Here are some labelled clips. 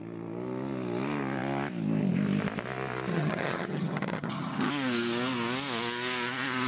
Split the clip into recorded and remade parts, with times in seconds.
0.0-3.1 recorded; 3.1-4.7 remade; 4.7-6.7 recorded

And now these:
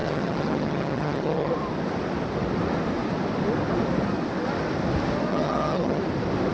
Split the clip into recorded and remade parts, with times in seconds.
0.0-1.5 remade; 1.5-5.3 recorded; 5.3-6.0 remade; 6.0-6.5 recorded

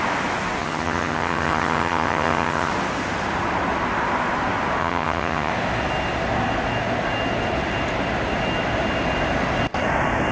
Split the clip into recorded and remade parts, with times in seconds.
0.0-0.6 recorded; 0.6-2.7 remade; 2.7-4.8 recorded; 4.8-5.5 remade; 5.5-10.3 recorded

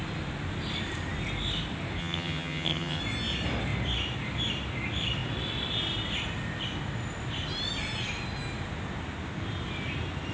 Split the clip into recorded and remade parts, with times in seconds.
0.0-2.0 recorded; 2.0-3.0 remade; 3.0-10.3 recorded